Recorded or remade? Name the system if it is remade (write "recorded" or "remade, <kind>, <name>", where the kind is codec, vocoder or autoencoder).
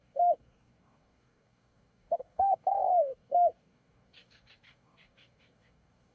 remade, codec, DAC